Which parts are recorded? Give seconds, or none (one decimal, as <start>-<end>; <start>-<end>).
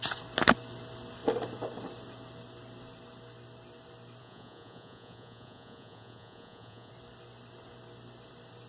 0.0-4.2; 6.9-8.7